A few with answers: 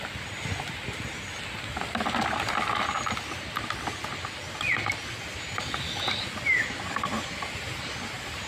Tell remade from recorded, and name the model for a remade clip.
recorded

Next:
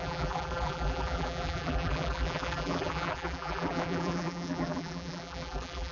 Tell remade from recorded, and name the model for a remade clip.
remade, vocoder, BigVGAN v2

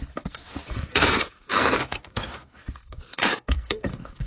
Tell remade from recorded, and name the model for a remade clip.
remade, codec, SNAC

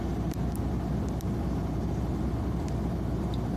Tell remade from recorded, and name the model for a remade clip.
recorded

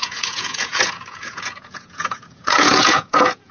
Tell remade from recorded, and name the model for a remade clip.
remade, vocoder, Vocos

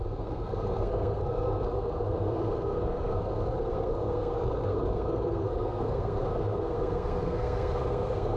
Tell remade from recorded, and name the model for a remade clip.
remade, codec, SNAC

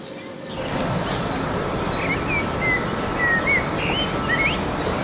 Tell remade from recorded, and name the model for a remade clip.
recorded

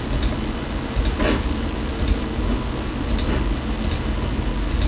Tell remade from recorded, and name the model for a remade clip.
recorded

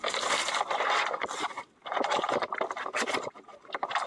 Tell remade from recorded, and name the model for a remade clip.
recorded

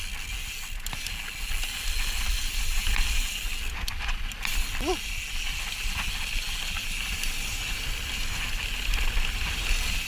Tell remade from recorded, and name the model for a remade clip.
recorded